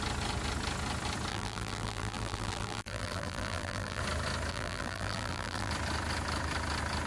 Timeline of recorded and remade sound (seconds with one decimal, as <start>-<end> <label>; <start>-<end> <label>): 0.0-1.3 recorded; 1.3-4.0 remade; 4.0-4.5 recorded; 4.5-5.7 remade; 5.7-7.1 recorded